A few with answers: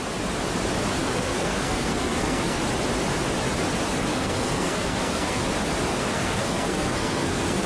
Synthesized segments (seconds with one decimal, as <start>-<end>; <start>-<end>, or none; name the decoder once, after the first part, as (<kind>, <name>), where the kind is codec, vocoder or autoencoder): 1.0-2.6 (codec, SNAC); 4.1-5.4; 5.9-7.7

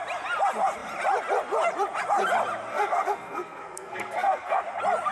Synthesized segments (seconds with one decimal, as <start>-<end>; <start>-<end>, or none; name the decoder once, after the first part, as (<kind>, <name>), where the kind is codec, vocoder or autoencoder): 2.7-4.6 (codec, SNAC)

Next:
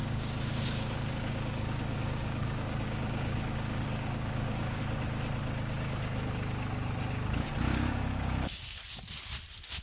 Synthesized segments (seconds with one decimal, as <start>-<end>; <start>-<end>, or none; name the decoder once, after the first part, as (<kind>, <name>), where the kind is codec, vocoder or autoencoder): 0.0-4.8 (codec, DAC); 7.7-8.8

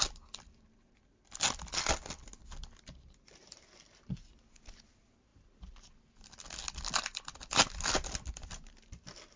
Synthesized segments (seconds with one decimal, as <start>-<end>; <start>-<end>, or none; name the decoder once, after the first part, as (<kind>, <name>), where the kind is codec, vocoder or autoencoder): none